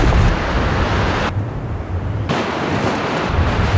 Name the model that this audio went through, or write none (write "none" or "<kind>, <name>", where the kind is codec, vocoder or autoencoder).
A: none